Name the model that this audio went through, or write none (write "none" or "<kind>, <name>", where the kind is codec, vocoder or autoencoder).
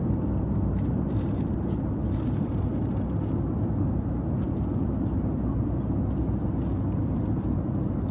none